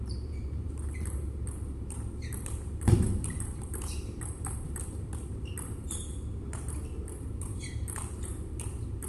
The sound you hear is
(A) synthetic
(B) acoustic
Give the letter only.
A